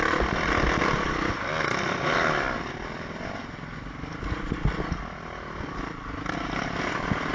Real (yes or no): yes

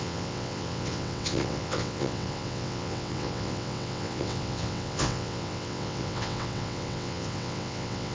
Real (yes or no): no